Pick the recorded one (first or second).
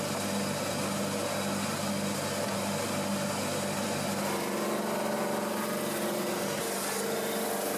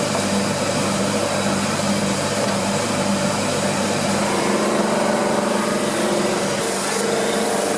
first